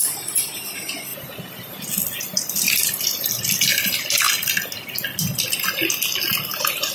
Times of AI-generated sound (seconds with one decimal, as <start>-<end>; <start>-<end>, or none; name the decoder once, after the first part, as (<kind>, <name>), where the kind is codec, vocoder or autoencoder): 1.1-1.9 (vocoder, BigVGAN v2)